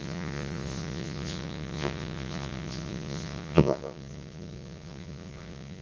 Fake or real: fake